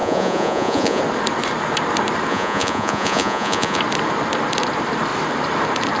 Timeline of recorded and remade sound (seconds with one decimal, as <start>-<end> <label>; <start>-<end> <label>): 0.0-1.0 remade; 1.0-2.3 recorded; 2.3-3.8 remade; 3.8-6.0 recorded